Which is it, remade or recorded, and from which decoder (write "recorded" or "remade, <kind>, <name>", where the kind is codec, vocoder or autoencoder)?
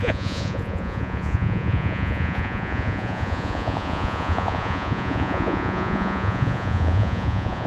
remade, vocoder, Vocos